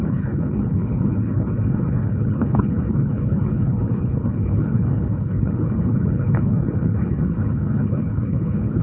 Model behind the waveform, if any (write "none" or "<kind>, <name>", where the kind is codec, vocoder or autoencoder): codec, HILCodec